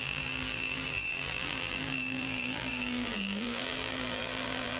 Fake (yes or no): yes